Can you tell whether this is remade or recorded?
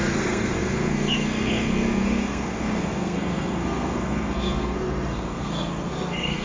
remade